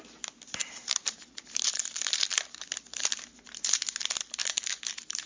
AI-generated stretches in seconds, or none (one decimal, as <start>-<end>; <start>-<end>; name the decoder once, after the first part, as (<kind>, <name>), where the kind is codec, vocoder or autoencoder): 0.6-3.8 (vocoder, BigVGAN v2); 4.4-5.3